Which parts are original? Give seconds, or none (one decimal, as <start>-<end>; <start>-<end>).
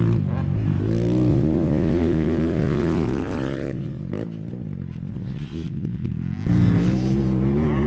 0.0-1.3; 4.0-5.1; 6.1-7.9